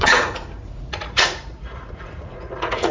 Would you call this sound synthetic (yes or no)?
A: yes